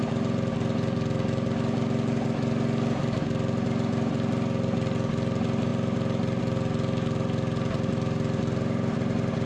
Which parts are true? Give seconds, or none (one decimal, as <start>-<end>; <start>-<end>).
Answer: 0.0-9.5